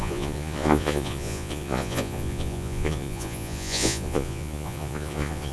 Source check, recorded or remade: remade